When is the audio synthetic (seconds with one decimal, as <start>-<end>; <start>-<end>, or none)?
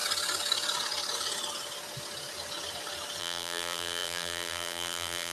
3.2-5.3